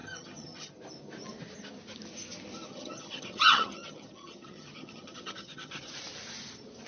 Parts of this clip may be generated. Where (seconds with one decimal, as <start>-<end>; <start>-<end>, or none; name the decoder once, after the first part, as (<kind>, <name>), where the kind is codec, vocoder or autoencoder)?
0.0-0.7 (vocoder, HiFi-GAN); 2.7-5.8